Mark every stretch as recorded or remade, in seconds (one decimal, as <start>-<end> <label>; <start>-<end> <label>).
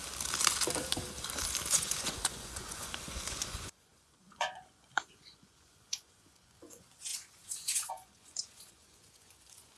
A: 0.0-1.7 recorded; 1.7-9.8 remade